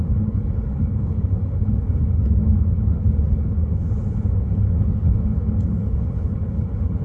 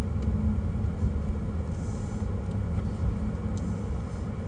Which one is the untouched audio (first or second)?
second